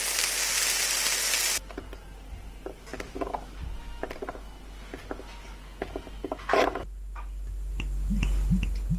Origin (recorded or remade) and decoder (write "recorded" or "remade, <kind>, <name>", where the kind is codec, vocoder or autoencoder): recorded